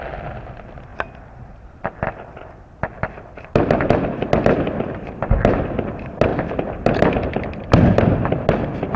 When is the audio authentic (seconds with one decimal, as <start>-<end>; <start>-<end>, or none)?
0.0-9.0